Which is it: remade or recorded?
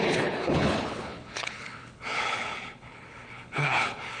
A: remade